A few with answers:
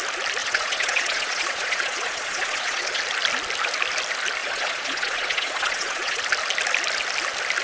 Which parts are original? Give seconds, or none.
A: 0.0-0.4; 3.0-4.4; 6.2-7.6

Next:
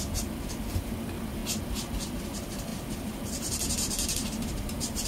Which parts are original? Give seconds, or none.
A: 1.4-2.2

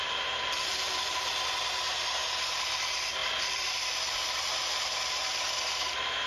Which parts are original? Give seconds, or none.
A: 0.0-3.2; 3.8-6.3

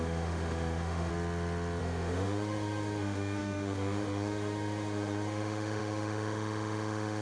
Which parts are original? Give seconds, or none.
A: 1.1-1.8

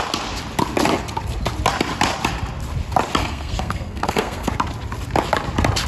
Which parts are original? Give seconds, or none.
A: 0.0-3.2; 4.5-5.9

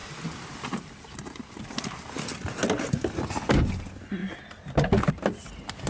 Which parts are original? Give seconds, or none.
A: 0.0-5.9

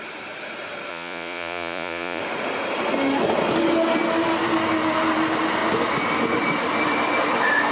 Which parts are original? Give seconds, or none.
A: 0.0-0.9; 2.2-7.7